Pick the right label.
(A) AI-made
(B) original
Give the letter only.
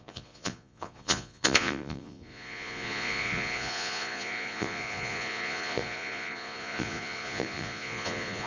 A